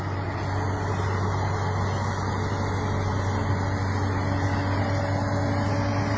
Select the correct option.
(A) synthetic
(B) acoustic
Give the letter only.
B